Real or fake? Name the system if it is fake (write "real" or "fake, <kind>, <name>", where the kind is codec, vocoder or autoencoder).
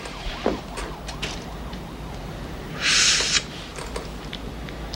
real